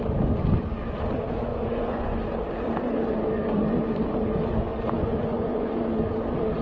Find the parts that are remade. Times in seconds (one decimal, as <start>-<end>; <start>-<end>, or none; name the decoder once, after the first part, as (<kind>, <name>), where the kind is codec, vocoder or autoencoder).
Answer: 1.5-2.2 (vocoder, Vocos); 5.0-5.7